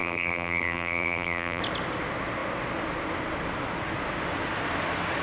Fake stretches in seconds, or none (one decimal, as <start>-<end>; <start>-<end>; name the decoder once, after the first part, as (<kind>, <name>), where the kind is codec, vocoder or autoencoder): 0.0-1.6 (vocoder, BigVGAN v2)